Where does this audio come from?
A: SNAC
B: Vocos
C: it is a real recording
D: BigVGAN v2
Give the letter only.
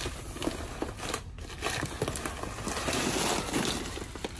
C